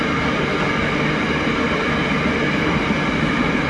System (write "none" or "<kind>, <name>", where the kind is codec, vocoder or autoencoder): vocoder, BigVGAN v2